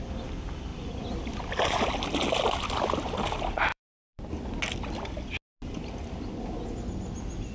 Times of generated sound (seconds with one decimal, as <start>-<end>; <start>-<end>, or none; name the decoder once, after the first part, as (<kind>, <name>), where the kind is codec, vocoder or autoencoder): 0.7-1.4 (vocoder, BigVGAN v2); 3.7-4.3